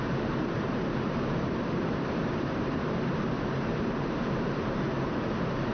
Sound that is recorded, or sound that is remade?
remade